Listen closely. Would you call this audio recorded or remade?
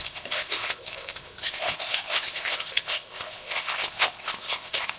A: remade